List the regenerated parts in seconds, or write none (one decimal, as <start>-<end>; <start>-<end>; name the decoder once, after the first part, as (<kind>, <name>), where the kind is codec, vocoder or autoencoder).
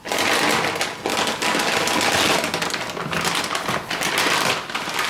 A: none